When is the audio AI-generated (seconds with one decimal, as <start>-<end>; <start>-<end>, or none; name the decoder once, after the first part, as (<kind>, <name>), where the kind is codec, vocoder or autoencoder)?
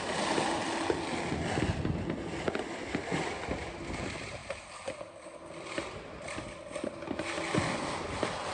none